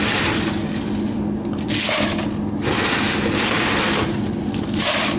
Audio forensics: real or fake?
real